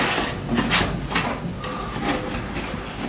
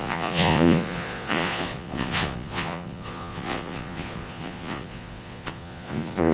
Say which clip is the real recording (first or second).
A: first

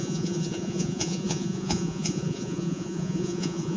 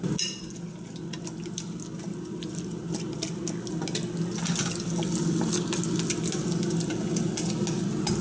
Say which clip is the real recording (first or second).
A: second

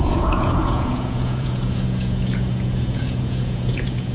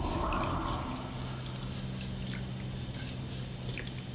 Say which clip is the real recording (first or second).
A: second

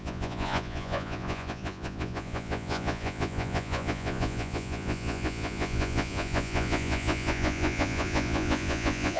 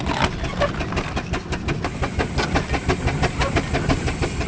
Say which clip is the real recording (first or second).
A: second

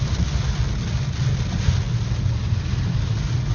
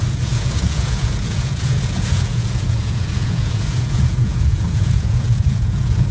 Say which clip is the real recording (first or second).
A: first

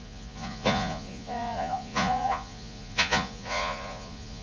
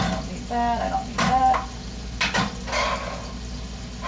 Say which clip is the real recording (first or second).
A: second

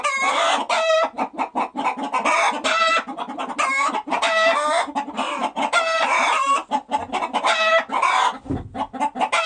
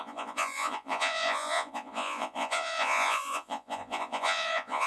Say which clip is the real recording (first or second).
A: first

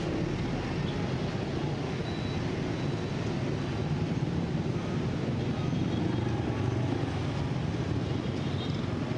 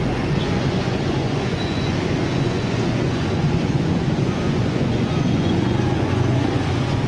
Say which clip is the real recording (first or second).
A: first